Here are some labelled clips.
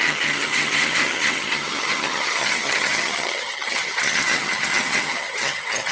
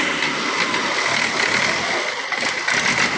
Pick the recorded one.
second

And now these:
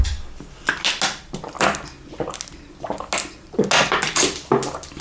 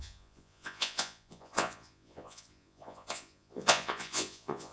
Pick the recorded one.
first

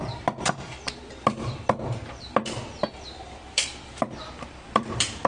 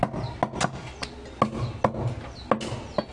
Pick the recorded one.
second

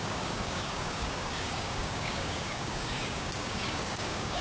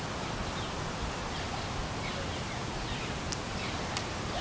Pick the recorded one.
second